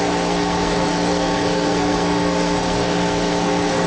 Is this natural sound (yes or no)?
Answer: no